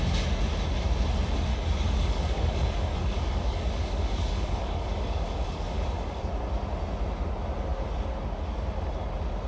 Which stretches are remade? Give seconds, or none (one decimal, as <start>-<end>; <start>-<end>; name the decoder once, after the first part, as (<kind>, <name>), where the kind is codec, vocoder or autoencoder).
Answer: 1.5-6.2 (codec, DAC)